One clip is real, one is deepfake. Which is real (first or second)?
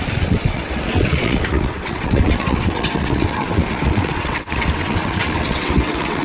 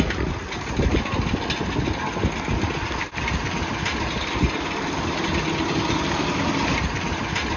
second